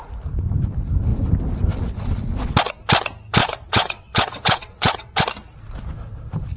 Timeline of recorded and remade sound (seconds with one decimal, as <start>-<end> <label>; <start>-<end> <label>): 0.0-3.4 recorded; 3.4-5.2 remade; 5.2-6.6 recorded